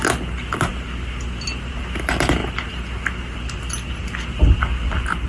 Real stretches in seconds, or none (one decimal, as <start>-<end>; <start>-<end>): 0.0-5.3

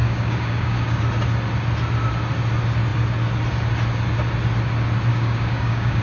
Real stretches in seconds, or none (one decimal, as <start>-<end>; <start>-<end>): 1.0-5.1